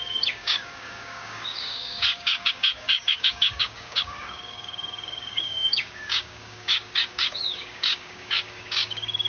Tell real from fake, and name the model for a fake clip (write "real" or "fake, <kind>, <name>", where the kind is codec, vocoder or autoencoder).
fake, codec, DAC